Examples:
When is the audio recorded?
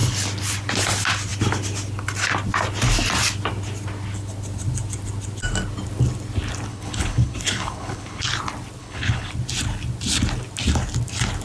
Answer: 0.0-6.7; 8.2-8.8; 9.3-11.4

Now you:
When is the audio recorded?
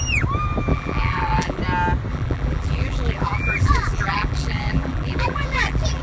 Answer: 0.0-0.7; 1.6-2.1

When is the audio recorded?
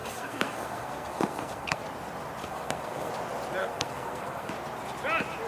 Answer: 1.8-2.4; 3.1-3.6; 4.5-5.5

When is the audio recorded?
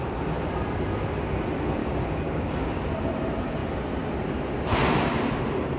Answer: 0.0-1.8; 2.8-5.8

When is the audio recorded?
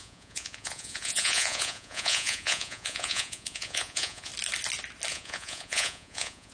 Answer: 4.3-5.1